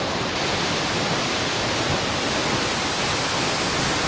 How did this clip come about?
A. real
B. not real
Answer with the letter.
A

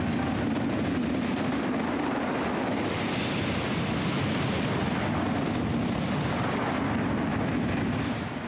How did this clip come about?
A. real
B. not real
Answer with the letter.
A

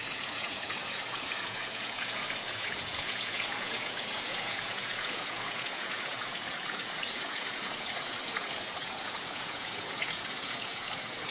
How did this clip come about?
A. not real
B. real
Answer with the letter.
A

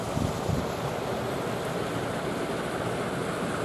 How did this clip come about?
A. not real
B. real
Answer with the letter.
B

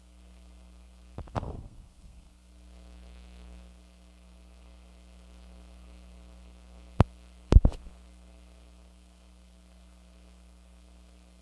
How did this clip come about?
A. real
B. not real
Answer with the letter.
B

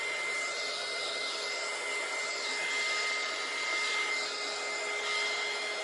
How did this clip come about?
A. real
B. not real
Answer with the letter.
A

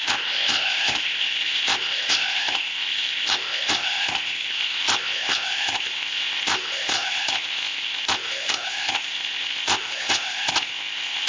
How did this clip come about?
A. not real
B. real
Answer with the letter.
A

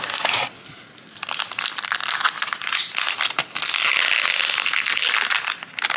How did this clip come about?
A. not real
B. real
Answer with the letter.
B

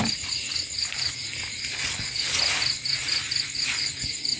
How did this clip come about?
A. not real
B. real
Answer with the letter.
B